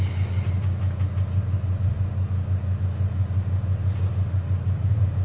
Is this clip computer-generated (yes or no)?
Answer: no